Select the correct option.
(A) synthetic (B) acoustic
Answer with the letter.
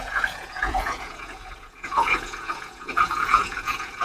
A